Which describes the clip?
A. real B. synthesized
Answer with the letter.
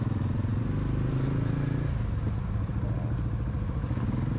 A